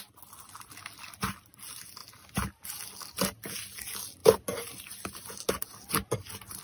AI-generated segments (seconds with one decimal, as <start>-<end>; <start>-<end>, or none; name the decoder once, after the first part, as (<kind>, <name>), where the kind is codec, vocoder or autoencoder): none